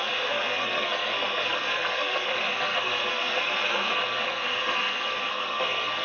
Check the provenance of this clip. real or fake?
fake